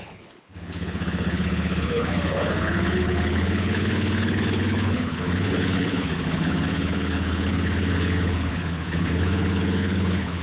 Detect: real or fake fake